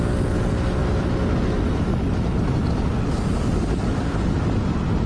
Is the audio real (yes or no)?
yes